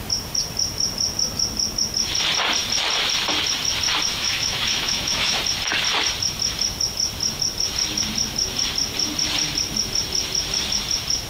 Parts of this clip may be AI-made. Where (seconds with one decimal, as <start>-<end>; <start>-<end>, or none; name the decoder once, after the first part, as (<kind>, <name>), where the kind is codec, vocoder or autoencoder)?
4.1-5.4 (autoencoder, DAC-VAE)